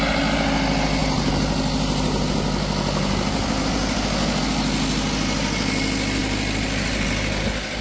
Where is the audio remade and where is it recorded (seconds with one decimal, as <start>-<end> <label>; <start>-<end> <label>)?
0.0-7.8 recorded